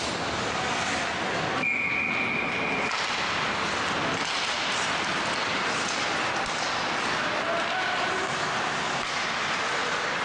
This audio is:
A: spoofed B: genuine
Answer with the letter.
B